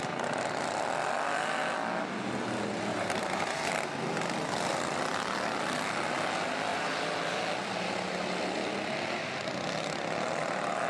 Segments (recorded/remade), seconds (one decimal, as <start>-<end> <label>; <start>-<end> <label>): 0.0-2.9 recorded; 2.9-3.7 remade; 3.7-6.7 recorded; 6.7-7.4 remade; 7.4-10.9 recorded